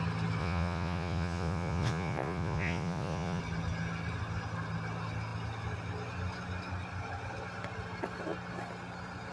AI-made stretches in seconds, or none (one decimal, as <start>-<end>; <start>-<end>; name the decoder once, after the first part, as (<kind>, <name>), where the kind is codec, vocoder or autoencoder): 0.4-3.4 (vocoder, Vocos)